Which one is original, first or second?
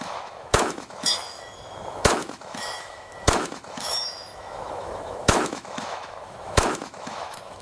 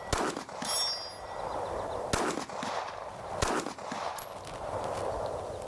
second